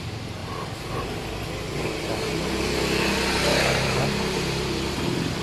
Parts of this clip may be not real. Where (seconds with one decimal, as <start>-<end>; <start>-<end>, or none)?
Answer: 0.0-0.4; 3.6-5.4